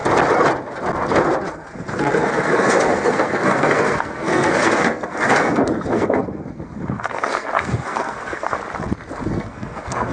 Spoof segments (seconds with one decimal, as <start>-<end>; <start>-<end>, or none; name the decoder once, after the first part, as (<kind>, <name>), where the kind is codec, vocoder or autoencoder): 1.5-8.6 (codec, SNAC); 9.2-10.1